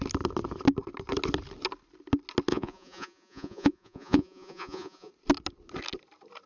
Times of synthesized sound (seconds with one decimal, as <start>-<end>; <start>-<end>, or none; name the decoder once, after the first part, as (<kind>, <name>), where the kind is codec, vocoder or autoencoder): 2.5-5.1 (vocoder, Vocos)